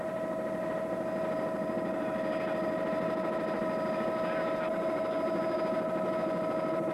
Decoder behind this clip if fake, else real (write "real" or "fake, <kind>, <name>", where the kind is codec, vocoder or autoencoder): real